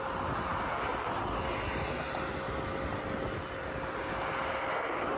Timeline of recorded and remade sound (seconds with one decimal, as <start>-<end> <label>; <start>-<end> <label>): 0.0-5.2 recorded